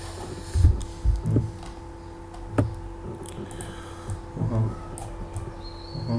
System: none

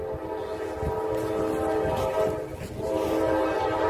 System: none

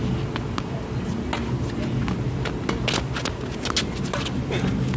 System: none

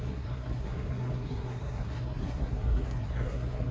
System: codec, SNAC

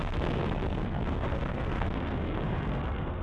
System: codec, SNAC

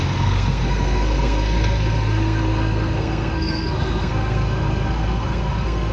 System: codec, SNAC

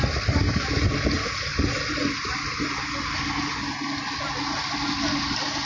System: none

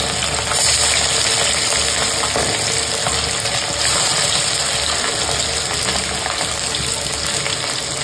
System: none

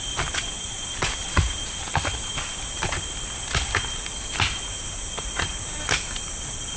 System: none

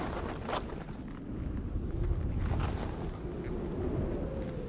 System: none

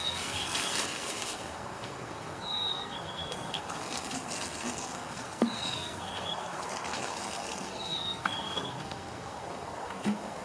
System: codec, SNAC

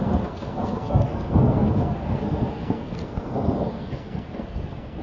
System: codec, SNAC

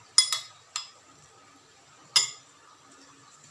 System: none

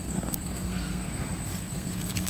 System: codec, SNAC